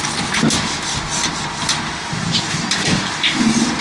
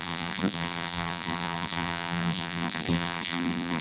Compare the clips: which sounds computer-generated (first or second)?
second